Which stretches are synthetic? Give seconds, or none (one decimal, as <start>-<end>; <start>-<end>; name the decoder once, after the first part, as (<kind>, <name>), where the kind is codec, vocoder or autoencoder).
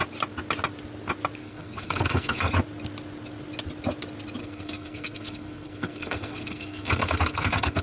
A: 1.4-2.5 (codec, SNAC); 4.4-7.8